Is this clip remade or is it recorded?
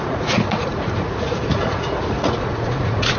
remade